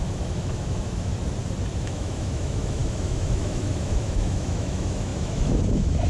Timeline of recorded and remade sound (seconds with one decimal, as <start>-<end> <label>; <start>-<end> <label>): 0.0-1.1 remade; 1.1-1.8 recorded; 1.8-6.1 remade